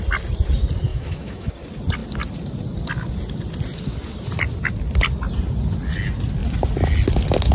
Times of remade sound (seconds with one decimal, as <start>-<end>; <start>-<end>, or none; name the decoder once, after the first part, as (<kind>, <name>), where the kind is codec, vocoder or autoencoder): 0.9-1.5 (autoencoder, DAC-VAE)